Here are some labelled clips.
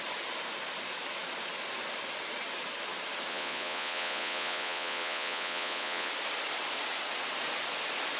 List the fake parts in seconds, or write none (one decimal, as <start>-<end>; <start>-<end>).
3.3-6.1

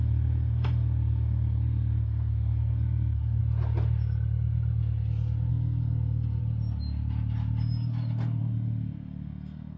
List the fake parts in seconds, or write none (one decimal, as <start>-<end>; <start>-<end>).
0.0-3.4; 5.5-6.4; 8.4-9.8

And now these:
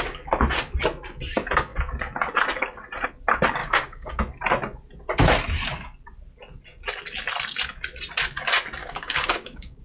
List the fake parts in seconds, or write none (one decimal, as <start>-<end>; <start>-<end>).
3.6-4.2; 8.8-9.8

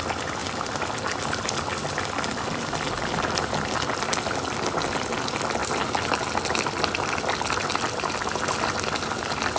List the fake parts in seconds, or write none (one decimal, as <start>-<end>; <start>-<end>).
none

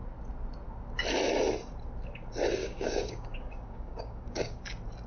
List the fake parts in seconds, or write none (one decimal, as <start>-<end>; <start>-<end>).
2.6-4.6

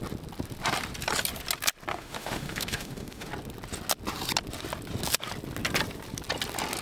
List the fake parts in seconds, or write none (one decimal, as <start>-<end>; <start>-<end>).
1.9-3.3